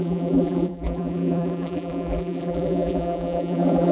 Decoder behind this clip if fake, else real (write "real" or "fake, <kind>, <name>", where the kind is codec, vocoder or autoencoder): fake, vocoder, BigVGAN v2